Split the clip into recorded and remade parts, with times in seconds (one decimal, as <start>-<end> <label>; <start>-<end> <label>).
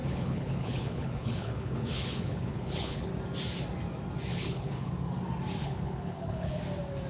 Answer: 0.0-3.1 remade; 3.1-4.3 recorded; 4.3-4.9 remade; 4.9-5.6 recorded; 5.6-6.6 remade; 6.6-7.1 recorded